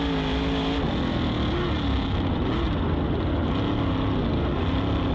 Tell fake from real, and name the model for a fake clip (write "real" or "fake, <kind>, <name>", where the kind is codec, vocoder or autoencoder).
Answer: real